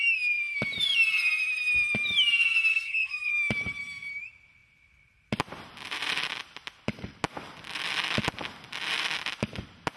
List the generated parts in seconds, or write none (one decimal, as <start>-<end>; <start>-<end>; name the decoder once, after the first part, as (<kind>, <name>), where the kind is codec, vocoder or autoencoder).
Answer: 2.7-3.3 (codec, SNAC)